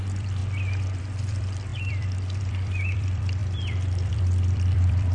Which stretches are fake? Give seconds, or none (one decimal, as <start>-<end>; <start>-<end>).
0.0-0.4; 1.0-5.1